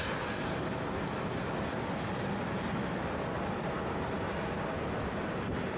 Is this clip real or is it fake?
real